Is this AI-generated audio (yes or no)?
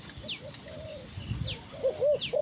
no